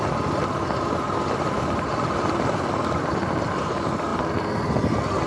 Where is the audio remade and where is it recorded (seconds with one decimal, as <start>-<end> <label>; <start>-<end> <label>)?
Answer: 0.0-5.3 recorded